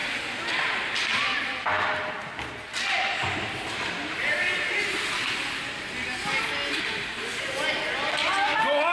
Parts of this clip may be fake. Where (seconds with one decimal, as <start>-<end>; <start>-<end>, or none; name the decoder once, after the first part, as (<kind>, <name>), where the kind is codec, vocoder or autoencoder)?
none